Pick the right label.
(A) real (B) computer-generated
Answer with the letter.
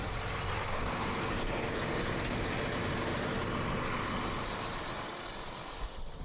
A